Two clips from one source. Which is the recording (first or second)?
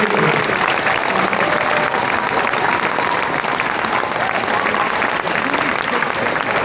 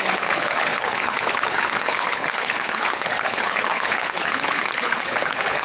first